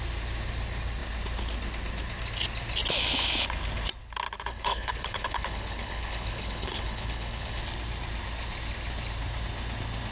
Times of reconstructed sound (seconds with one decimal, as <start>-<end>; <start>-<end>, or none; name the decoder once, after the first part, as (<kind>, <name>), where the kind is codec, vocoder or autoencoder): 4.5-7.6 (codec, HILCodec)